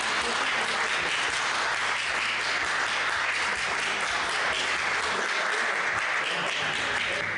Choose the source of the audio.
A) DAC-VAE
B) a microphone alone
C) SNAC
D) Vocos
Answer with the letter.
B